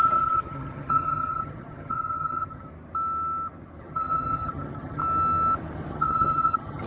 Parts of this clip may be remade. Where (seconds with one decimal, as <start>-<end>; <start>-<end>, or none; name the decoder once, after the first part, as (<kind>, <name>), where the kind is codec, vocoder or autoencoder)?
0.0-2.7 (vocoder, HiFi-GAN); 3.8-5.0; 5.9-6.9